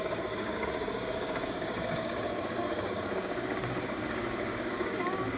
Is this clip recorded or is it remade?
remade